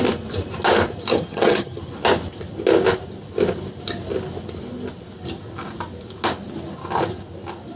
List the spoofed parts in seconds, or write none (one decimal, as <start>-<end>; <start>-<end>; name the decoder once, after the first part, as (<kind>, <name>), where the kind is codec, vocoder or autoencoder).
1.1-1.8 (vocoder, HiFi-GAN)